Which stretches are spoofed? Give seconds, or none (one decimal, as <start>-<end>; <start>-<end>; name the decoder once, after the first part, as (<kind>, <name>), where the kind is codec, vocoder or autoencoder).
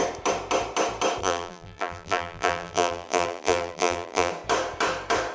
1.2-4.3 (vocoder, BigVGAN v2)